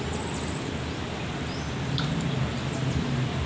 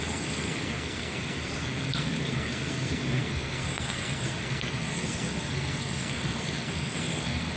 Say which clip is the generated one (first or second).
second